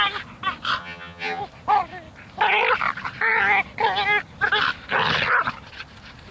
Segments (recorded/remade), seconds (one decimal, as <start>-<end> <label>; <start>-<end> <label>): 0.0-0.8 recorded; 0.8-1.4 remade; 1.4-6.3 recorded

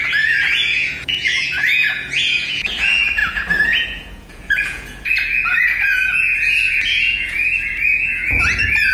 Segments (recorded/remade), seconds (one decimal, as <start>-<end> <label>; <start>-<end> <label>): 0.0-8.9 remade

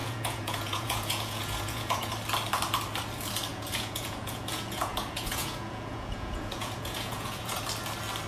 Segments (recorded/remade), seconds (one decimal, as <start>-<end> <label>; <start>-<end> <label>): 0.0-2.1 remade; 2.1-3.5 recorded; 3.5-7.6 remade; 7.6-8.3 recorded

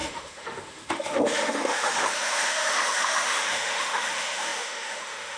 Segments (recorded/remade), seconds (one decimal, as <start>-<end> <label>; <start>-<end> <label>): 0.0-5.4 remade

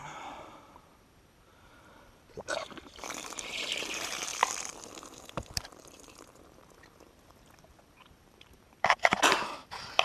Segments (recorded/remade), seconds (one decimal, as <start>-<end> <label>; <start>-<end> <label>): 0.0-4.3 remade; 4.3-5.0 recorded; 5.0-10.0 remade